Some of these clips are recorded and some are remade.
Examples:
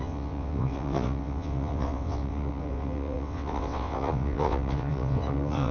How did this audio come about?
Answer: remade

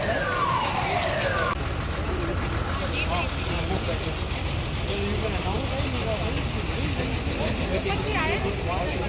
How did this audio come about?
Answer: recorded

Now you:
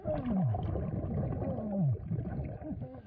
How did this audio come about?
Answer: recorded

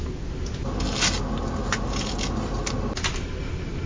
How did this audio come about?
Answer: recorded